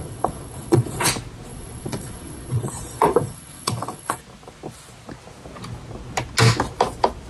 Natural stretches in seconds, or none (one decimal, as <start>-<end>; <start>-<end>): 1.1-1.5; 4.2-7.3